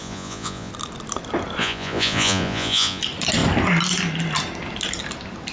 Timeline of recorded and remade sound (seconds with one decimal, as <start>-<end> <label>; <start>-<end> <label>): 0.0-0.7 remade; 0.7-1.6 recorded; 1.6-3.0 remade; 3.0-5.5 recorded